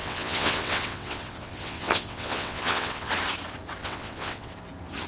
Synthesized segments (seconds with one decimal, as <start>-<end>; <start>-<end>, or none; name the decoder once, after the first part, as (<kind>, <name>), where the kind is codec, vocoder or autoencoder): 0.0-3.1 (vocoder, WaveNeXt); 3.8-4.5